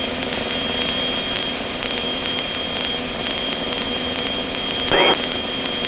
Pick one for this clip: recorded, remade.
recorded